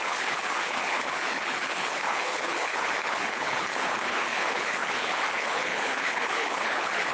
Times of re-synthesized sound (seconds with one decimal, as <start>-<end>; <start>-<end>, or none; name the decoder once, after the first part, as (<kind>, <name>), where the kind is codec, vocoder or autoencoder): 0.0-7.1 (codec, HILCodec)

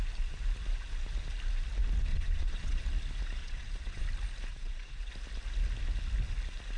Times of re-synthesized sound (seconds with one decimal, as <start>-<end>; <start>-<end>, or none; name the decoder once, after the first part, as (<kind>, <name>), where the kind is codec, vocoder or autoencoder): 2.1-2.8 (vocoder, Vocos); 3.4-4.0; 4.5-5.1

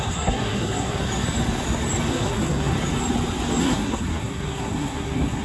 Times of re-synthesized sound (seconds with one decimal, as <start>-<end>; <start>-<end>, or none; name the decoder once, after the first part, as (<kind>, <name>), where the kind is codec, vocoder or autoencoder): 0.0-1.0 (codec, SNAC); 2.1-2.7; 3.6-5.4

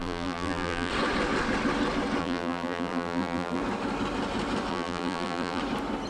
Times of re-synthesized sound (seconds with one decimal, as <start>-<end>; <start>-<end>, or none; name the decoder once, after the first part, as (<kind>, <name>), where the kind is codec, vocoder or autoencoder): 0.0-0.9 (vocoder, BigVGAN v2); 2.2-3.6; 4.7-5.6

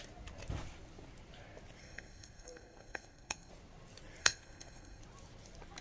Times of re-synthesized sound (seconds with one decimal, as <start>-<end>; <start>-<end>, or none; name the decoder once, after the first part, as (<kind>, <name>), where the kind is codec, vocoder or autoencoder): 1.8-3.5 (codec, SNAC); 4.2-5.0

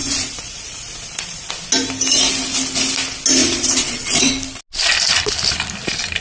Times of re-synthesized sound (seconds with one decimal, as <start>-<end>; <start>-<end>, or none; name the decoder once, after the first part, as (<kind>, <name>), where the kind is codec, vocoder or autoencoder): 0.0-1.5 (vocoder, Vocos); 3.4-4.3

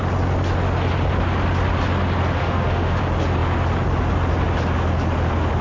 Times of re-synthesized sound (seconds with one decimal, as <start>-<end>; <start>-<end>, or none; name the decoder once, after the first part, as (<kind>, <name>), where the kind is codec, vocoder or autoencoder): 2.4-3.0 (autoencoder, DAC-VAE)